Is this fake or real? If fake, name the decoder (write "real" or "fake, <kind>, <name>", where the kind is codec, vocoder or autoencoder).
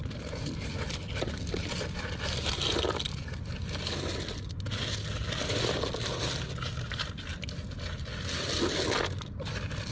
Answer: real